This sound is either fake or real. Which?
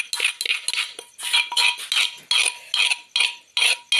real